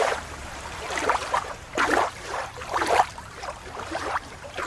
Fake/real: fake